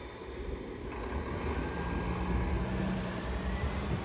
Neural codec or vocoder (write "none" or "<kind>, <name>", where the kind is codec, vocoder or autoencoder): none